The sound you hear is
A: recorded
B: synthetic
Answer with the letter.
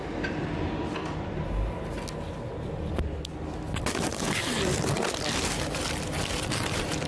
A